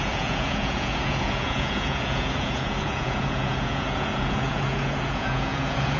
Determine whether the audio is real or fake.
fake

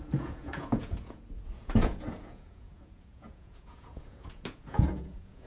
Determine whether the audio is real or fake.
fake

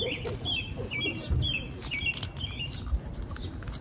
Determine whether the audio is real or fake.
real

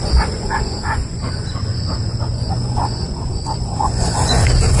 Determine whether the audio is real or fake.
fake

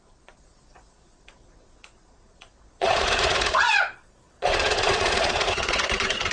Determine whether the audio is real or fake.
fake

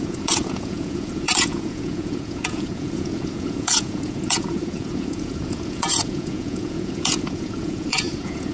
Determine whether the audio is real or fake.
fake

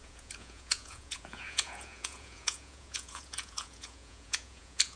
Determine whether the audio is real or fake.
fake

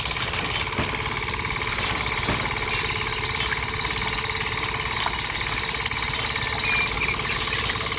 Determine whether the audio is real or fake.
real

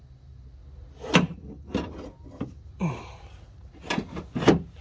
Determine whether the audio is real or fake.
real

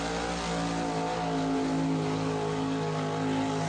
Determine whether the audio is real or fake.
real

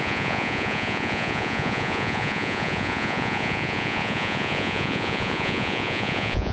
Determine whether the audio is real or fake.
fake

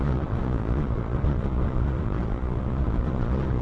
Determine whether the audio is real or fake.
fake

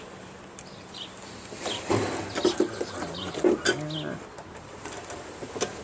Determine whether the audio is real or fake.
real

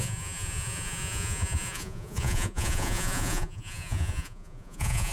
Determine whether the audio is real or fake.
fake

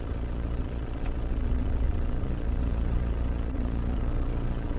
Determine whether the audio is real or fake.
fake